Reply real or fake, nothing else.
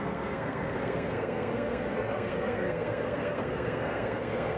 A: fake